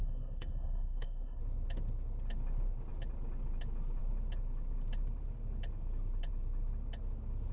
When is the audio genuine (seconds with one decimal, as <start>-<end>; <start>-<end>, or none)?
1.4-7.5